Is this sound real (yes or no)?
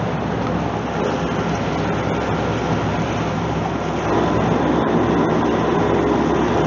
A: yes